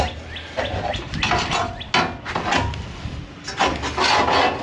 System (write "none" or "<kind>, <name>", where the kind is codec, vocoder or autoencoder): none